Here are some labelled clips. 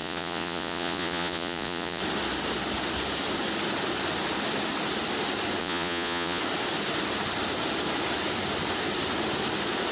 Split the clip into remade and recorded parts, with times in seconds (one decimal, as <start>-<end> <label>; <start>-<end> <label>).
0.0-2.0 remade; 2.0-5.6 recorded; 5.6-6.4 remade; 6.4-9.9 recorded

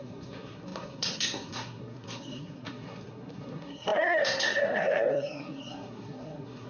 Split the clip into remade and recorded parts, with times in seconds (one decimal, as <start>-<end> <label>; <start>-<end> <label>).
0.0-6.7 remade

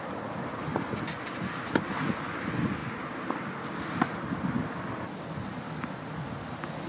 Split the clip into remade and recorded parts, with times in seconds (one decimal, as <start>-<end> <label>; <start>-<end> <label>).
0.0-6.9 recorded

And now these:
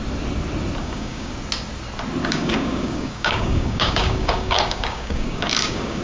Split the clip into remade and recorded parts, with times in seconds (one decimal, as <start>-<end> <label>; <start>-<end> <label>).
0.0-0.8 recorded; 0.8-1.3 remade; 1.3-2.2 recorded; 2.2-6.0 remade

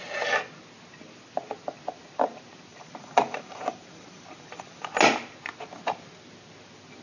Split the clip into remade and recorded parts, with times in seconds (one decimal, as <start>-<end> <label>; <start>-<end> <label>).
0.0-2.7 recorded; 2.7-4.9 remade; 4.9-7.0 recorded